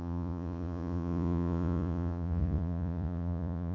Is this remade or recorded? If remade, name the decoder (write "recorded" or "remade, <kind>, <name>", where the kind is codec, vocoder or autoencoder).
remade, vocoder, Vocos